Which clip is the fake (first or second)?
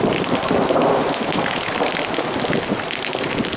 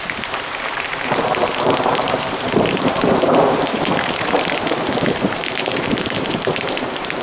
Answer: second